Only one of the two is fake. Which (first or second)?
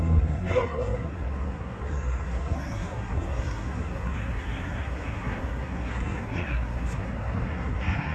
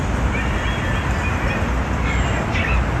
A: first